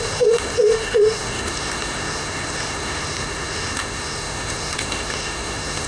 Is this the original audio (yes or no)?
no